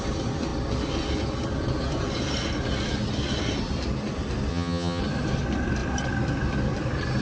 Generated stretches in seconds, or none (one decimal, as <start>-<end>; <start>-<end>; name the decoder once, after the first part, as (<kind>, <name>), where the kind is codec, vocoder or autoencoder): 4.5-5.0 (vocoder, HiFi-GAN)